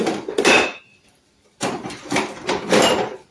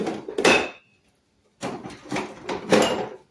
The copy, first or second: first